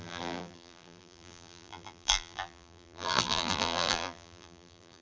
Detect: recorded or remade remade